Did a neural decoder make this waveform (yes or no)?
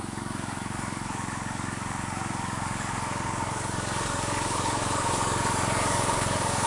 yes